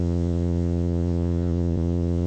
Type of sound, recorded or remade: remade